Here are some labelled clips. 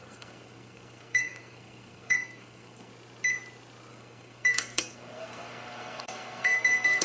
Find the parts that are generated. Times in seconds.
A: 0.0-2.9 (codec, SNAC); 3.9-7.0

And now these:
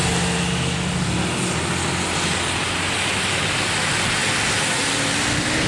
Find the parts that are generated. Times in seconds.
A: 3.4-4.2 (vocoder, BigVGAN v2)

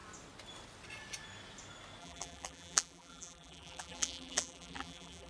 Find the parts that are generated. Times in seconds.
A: 2.0-5.3 (vocoder, BigVGAN v2)